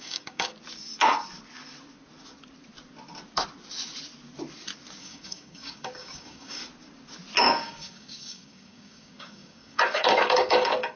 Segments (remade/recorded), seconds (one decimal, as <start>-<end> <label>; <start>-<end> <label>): 0.0-0.5 remade; 0.5-5.0 recorded; 5.0-6.6 remade; 6.6-7.4 recorded; 7.4-11.0 remade